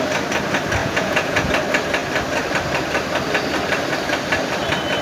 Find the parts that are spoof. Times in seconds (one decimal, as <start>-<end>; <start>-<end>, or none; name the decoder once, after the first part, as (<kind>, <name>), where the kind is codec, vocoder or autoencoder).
0.8-1.5 (vocoder, Vocos)